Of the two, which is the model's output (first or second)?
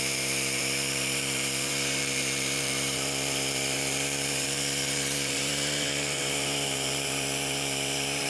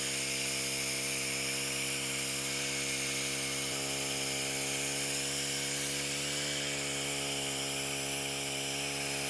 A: first